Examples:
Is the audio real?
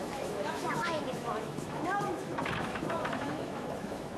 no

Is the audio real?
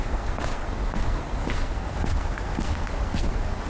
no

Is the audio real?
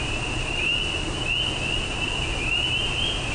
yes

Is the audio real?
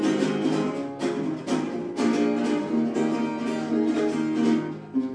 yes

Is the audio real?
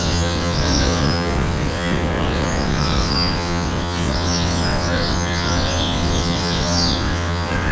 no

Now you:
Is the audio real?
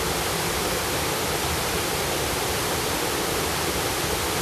yes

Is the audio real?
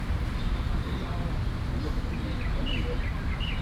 yes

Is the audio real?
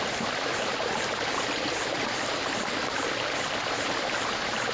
yes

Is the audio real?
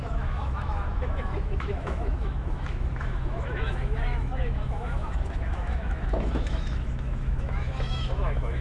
no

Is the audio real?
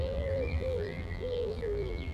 no